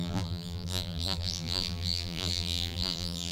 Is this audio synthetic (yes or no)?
yes